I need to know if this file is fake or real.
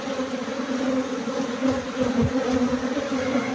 fake